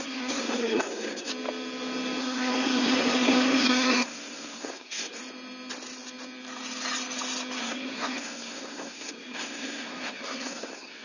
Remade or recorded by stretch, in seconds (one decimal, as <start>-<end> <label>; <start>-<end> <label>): 0.0-1.3 remade; 1.3-2.2 recorded; 2.2-5.2 remade; 5.2-7.6 recorded; 7.6-11.0 remade